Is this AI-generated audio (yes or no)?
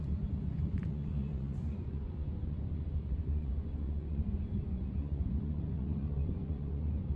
yes